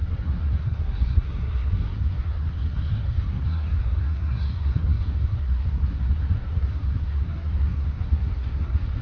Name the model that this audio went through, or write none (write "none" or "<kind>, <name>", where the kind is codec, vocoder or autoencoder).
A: codec, SNAC